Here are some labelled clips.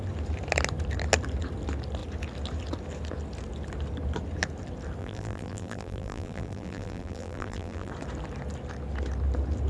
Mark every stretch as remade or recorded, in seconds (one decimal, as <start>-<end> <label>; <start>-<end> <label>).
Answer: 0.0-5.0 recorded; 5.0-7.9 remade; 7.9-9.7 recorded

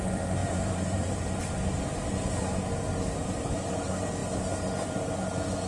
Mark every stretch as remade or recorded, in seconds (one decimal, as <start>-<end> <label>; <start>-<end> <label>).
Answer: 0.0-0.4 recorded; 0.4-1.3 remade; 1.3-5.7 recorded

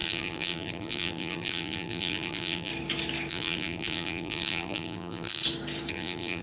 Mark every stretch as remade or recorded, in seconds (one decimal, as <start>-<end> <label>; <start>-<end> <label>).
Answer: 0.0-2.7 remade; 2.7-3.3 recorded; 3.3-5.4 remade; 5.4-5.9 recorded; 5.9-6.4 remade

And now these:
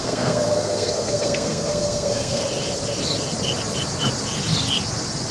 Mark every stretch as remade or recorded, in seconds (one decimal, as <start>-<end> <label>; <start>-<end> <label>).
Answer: 0.0-2.4 remade; 2.4-5.3 recorded